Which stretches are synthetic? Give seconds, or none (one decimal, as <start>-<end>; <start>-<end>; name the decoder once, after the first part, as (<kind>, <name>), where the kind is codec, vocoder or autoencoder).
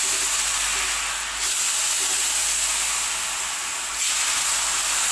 none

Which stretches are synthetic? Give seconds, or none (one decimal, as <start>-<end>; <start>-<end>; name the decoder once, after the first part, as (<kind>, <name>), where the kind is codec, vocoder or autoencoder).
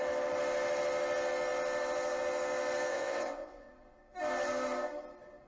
2.9-3.7 (vocoder, WaveNeXt)